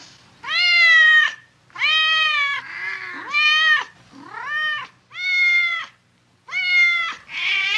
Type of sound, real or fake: real